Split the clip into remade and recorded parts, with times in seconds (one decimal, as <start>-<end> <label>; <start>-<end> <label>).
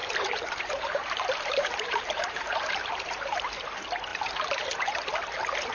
0.0-3.4 remade; 3.4-4.1 recorded; 4.1-5.0 remade; 5.0-5.7 recorded